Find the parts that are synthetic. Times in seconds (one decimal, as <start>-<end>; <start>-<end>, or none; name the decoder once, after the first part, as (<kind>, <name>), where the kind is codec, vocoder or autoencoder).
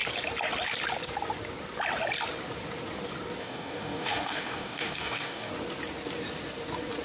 3.4-5.5 (codec, DAC)